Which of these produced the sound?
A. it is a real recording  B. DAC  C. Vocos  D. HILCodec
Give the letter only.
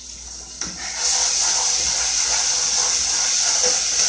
A